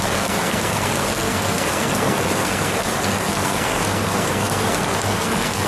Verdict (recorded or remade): remade